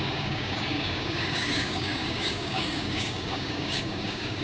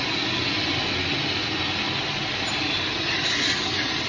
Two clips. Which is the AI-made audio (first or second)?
first